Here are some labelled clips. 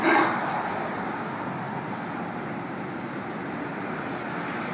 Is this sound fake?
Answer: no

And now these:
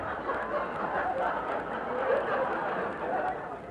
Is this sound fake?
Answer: no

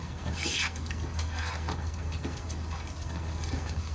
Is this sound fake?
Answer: yes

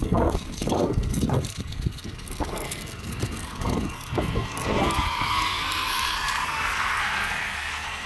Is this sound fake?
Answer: yes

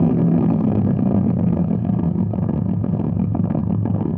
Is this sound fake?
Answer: yes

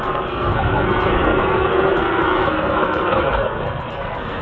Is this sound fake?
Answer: yes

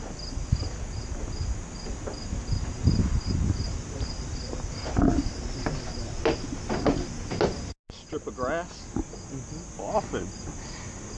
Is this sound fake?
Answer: no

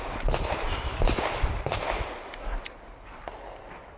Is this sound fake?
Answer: no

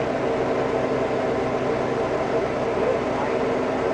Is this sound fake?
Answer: no